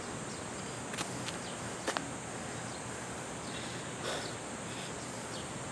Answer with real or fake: real